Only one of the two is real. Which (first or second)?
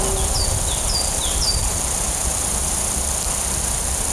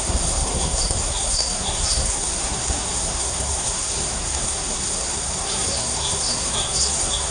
first